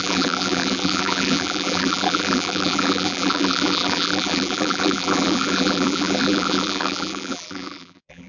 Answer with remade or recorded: remade